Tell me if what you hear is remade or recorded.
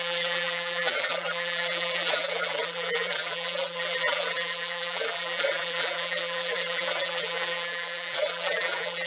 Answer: remade